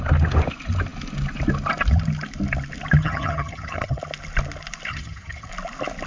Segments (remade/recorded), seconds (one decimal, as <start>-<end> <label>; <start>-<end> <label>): 0.0-3.0 recorded; 3.0-4.0 remade; 4.0-4.9 recorded; 4.9-5.5 remade; 5.5-6.1 recorded